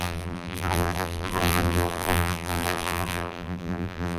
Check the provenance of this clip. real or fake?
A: fake